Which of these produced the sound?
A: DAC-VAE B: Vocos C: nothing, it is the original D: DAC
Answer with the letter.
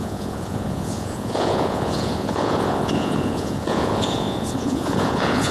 B